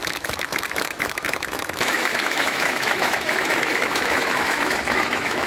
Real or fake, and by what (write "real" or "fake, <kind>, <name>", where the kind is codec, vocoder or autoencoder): fake, autoencoder, DAC-VAE